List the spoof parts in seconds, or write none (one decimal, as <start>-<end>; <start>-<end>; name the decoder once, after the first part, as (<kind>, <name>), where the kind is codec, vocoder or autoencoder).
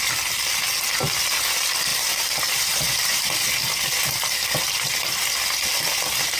none